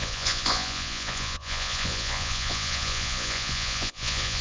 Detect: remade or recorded remade